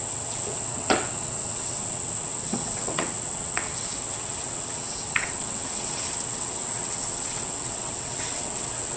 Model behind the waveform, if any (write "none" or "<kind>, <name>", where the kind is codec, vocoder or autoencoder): vocoder, WaveNeXt